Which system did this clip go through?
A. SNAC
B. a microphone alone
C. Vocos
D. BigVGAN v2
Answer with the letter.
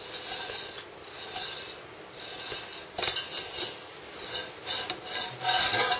B